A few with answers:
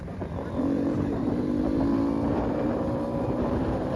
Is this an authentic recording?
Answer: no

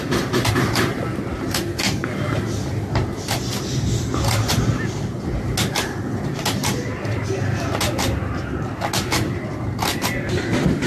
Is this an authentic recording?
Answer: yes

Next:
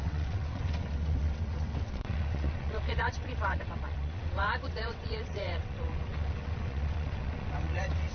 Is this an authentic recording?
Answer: no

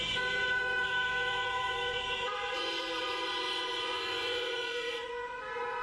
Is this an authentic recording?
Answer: no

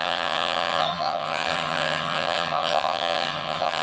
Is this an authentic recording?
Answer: no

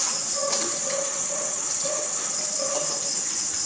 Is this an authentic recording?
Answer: no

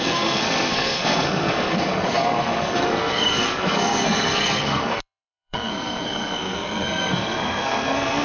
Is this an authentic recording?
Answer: no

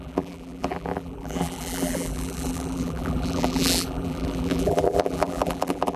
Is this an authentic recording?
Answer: no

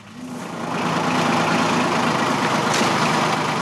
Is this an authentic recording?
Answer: yes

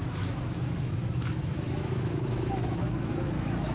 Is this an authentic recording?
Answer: no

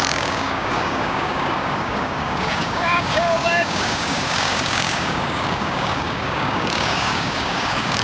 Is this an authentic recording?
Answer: no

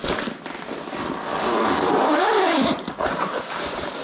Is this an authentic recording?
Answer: yes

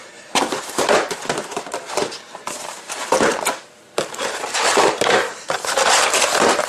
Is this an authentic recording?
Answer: no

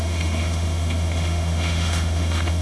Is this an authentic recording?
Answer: no